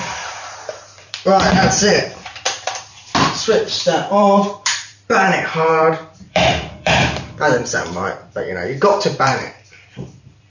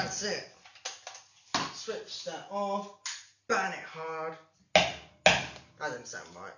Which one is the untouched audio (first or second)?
second